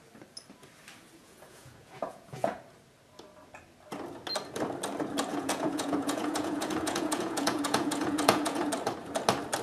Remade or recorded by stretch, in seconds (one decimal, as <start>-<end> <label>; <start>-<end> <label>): 0.0-1.2 recorded; 1.2-2.6 remade; 2.6-5.3 recorded; 5.3-8.7 remade; 8.7-9.6 recorded